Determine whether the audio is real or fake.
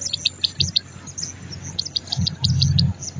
real